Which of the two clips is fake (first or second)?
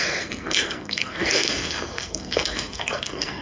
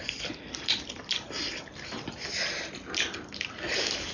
first